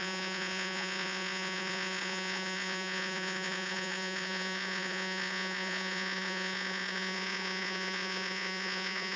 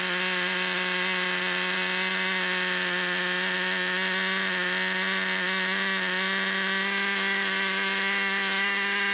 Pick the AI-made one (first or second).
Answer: first